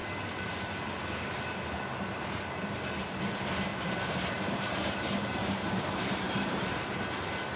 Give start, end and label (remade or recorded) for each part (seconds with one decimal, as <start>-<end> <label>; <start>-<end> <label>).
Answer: 0.0-3.7 recorded; 3.7-6.5 remade; 6.5-7.6 recorded